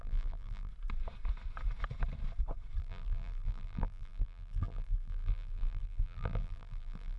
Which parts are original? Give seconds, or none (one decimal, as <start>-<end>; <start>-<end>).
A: 0.7-2.8